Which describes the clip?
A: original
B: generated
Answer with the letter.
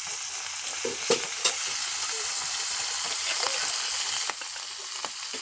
A